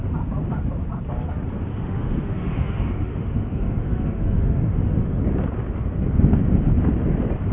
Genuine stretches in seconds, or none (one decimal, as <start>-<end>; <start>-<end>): 0.0-1.7; 5.2-7.5

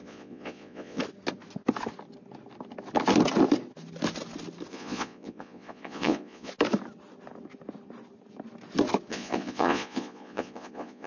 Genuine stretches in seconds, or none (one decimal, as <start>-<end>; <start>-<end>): 1.0-4.7; 6.5-9.1